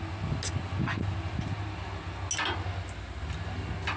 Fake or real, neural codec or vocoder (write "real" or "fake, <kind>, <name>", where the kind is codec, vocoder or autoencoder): real